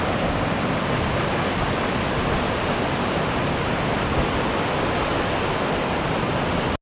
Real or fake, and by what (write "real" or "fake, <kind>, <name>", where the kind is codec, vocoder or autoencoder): real